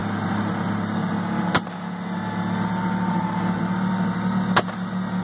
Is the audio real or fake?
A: real